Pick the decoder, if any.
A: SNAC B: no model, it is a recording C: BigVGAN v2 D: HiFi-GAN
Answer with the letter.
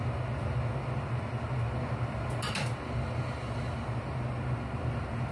B